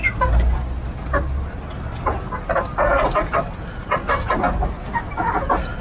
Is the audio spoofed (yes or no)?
no